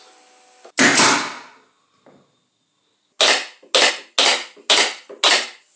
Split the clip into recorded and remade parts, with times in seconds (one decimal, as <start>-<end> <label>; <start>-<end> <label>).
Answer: 0.0-5.8 recorded